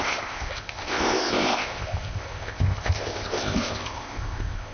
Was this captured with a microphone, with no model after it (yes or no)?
no